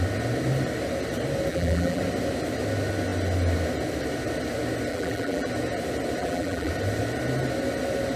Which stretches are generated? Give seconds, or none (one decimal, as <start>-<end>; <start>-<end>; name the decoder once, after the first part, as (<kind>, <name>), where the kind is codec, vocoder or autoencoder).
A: 1.5-2.0 (vocoder, BigVGAN v2); 4.9-5.5; 6.2-6.7